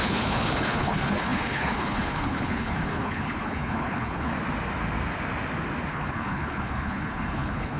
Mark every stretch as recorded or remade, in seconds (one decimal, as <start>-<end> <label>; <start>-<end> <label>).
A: 0.0-4.3 remade; 4.3-5.9 recorded; 5.9-7.8 remade